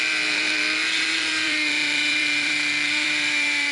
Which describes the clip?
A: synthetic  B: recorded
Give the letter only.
A